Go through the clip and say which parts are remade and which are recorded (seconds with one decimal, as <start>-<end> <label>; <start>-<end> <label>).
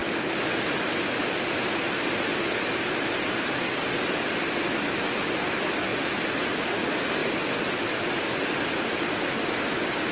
0.0-2.3 remade; 2.3-5.9 recorded; 5.9-6.6 remade; 6.6-7.2 recorded; 7.2-7.9 remade; 7.9-10.1 recorded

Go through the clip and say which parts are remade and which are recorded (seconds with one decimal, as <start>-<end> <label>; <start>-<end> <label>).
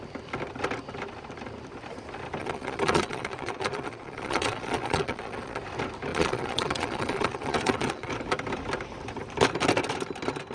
0.0-2.4 recorded; 2.4-5.6 remade; 5.6-6.1 recorded; 6.1-8.1 remade; 8.1-10.5 recorded